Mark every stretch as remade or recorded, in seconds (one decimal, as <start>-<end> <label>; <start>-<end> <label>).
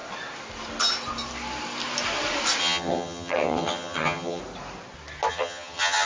0.0-2.6 recorded; 2.6-4.4 remade; 4.4-5.3 recorded; 5.3-6.1 remade